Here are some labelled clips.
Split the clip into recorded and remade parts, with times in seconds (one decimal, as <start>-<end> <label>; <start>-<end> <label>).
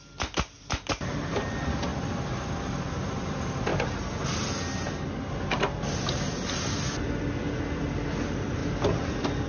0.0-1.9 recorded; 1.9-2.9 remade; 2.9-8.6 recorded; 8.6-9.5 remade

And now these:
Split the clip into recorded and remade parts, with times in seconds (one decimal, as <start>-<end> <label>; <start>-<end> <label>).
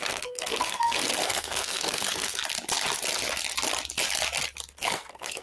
0.0-2.4 remade; 2.4-4.8 recorded; 4.8-5.4 remade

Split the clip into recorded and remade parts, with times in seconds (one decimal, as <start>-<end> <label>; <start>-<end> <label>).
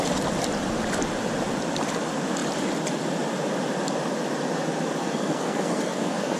0.0-5.0 recorded; 5.0-6.4 remade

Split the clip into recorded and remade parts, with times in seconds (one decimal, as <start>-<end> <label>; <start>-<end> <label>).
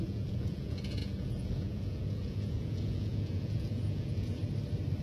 0.0-4.4 remade; 4.4-5.0 recorded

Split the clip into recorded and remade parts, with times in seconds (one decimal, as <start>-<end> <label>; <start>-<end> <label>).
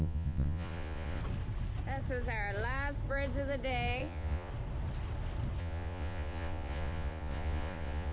0.0-1.2 remade; 1.2-4.0 recorded; 4.0-4.5 remade; 4.5-5.6 recorded; 5.6-8.1 remade